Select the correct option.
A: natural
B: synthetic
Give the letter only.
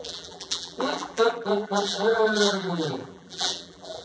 B